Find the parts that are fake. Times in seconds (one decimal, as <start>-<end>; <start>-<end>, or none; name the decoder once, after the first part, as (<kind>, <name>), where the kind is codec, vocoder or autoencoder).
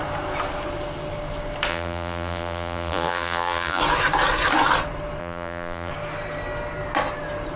1.7-3.8 (vocoder, BigVGAN v2); 5.2-5.9